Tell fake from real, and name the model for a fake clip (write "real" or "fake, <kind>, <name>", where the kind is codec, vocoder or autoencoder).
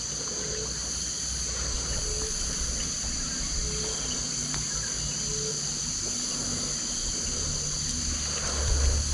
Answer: real